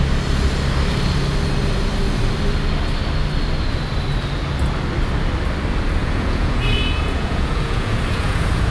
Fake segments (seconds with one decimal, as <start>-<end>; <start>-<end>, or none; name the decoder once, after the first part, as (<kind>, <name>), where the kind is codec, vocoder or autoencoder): 6.0-8.7 (vocoder, Vocos)